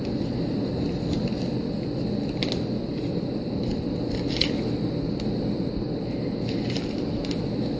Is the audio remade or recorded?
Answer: recorded